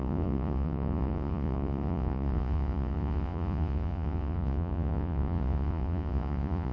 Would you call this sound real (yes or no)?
no